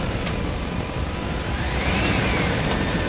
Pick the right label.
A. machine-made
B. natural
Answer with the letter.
A